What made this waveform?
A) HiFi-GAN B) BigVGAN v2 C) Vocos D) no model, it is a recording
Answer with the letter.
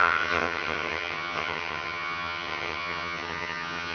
A